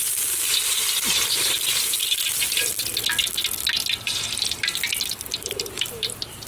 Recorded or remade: recorded